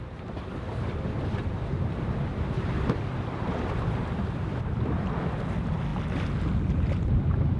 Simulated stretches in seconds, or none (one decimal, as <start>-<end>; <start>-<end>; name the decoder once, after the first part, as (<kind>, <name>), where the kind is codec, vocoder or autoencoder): none